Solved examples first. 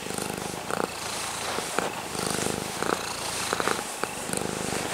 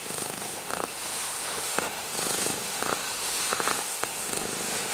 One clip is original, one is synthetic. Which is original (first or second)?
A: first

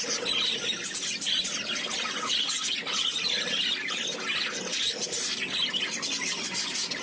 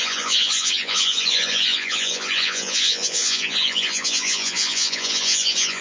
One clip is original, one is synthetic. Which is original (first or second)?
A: first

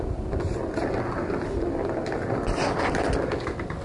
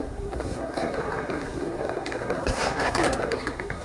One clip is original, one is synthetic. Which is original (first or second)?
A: first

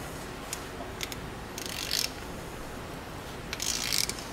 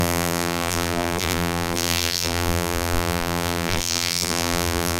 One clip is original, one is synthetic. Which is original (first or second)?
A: first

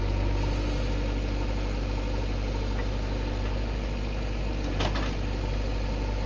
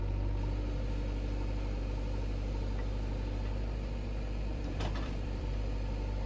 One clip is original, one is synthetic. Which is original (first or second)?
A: first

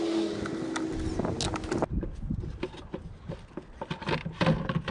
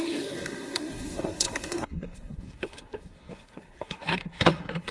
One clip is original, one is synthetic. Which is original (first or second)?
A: first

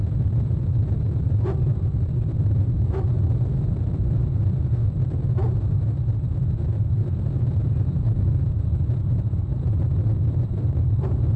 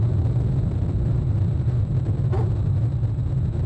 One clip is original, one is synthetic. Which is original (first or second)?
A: second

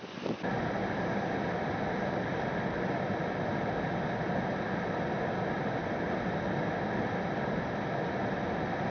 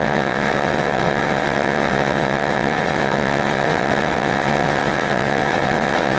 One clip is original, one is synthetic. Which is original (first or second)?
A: first